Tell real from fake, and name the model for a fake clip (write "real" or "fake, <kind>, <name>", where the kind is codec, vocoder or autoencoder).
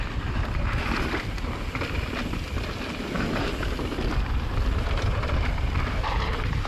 real